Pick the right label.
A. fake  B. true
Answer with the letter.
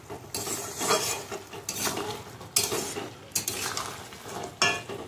B